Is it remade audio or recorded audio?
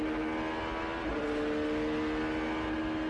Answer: recorded